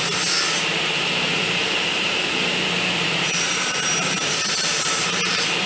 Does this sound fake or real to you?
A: fake